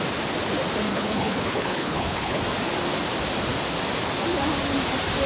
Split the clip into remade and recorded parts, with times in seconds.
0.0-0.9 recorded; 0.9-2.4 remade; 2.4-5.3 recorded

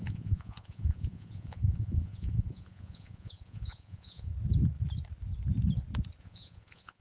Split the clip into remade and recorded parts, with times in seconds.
0.0-4.3 remade; 4.3-6.2 recorded; 6.2-7.0 remade

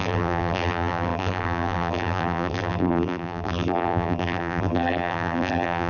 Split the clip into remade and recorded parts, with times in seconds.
0.0-5.9 remade

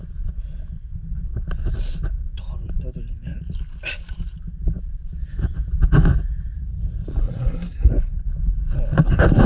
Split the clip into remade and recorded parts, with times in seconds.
0.0-7.2 recorded; 7.2-7.9 remade; 7.9-9.5 recorded

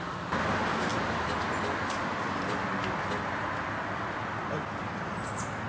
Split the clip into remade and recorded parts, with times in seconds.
0.0-5.7 recorded

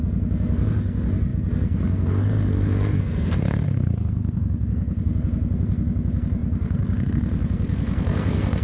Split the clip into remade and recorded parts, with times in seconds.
0.0-8.6 remade

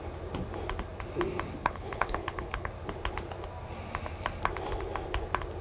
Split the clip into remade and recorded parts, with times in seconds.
0.0-1.6 recorded; 1.6-2.7 remade; 2.7-5.6 recorded

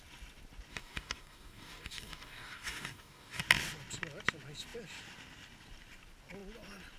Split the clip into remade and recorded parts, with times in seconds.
0.0-0.7 recorded; 0.7-3.4 remade; 3.4-7.0 recorded